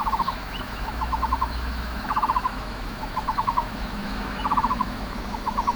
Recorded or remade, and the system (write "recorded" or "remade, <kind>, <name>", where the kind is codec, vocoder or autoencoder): remade, autoencoder, DAC-VAE